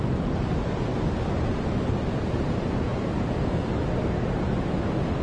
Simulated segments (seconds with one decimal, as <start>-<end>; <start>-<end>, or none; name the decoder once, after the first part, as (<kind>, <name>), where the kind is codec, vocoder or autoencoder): none